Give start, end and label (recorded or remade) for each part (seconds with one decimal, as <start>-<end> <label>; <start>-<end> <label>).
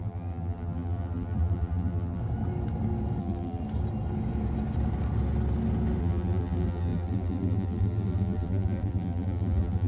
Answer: 0.0-2.2 remade; 2.2-3.2 recorded; 3.2-3.6 remade; 3.6-6.0 recorded; 6.0-9.9 remade